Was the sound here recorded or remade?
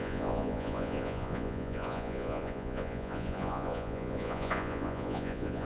remade